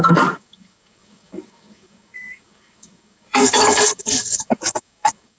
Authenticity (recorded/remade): remade